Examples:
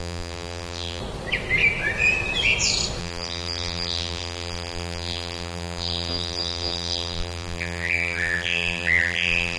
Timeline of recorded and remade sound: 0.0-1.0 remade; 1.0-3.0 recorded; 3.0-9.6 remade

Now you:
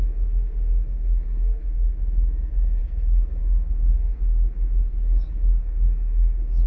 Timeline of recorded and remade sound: 0.0-6.7 remade

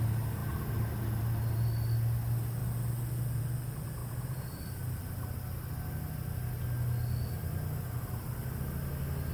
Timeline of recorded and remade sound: 0.0-4.0 recorded; 4.0-4.6 remade; 4.6-9.3 recorded

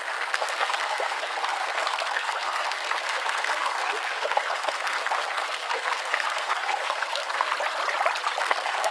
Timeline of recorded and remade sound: 0.0-7.5 remade; 7.5-8.4 recorded; 8.4-8.9 remade

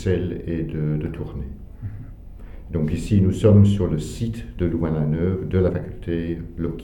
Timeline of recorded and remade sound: 0.0-4.1 recorded; 4.1-5.7 remade; 5.7-6.8 recorded

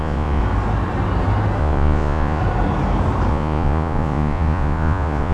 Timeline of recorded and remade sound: 0.0-0.4 remade; 0.4-1.6 recorded; 1.6-2.4 remade; 2.4-3.3 recorded; 3.3-5.3 remade

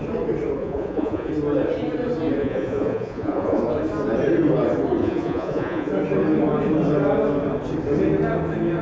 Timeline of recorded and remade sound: 0.0-0.6 recorded; 0.6-1.3 remade; 1.3-2.4 recorded; 2.4-3.6 remade; 3.6-5.0 recorded; 5.0-5.9 remade; 5.9-8.8 recorded